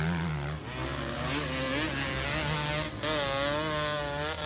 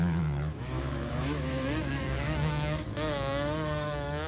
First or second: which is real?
first